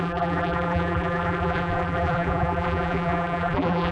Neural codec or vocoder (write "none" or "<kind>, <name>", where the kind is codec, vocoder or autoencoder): vocoder, BigVGAN v2